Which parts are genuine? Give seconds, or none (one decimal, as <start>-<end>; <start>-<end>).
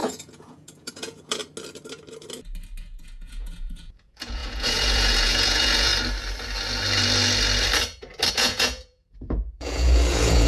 1.4-2.8; 5.9-8.3